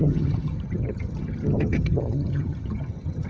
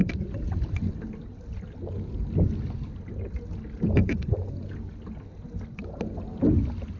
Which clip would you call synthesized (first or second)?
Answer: first